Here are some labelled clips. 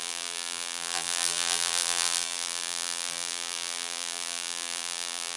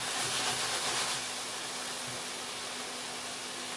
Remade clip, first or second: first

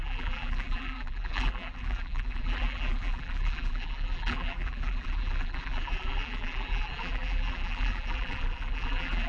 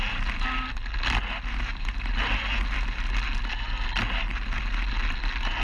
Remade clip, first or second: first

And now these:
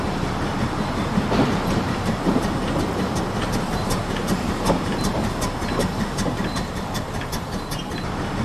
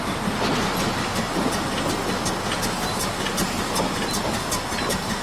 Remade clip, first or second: first